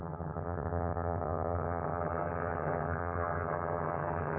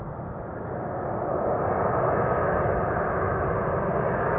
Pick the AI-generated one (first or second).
first